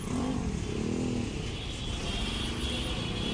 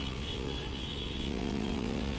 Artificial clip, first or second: second